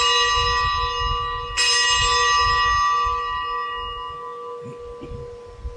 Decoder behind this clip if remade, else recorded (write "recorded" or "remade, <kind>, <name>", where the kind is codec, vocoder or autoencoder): recorded